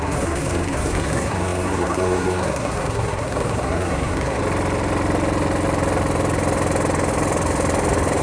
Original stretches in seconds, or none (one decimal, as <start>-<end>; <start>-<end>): 4.4-8.2